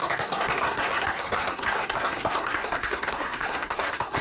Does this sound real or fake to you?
fake